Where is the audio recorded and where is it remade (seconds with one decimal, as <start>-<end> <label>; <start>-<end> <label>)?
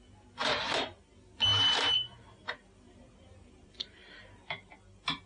0.0-0.4 recorded; 0.4-1.0 remade; 1.0-1.5 recorded; 1.5-4.7 remade; 4.7-5.3 recorded